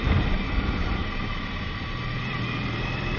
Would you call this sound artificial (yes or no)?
yes